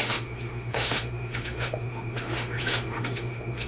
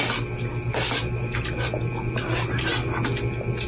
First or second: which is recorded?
second